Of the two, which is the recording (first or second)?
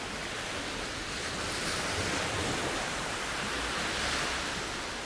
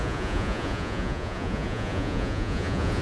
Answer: first